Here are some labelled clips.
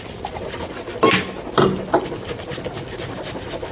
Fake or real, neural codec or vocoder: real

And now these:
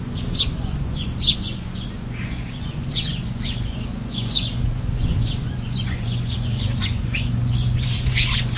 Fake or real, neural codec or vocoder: fake, vocoder, Vocos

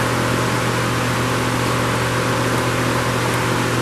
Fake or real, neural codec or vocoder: real